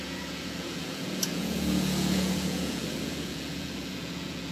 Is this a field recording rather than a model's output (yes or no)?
no